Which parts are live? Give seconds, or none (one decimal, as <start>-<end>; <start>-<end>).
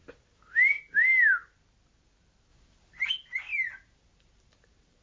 0.0-2.5; 3.1-3.5